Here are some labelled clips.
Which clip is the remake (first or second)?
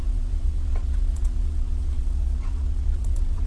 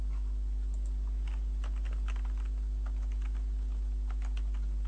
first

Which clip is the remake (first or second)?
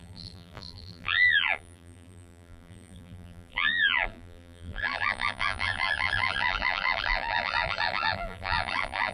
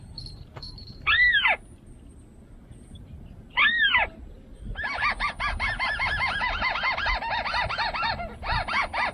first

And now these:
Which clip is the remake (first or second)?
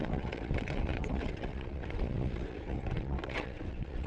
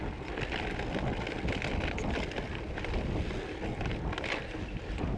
first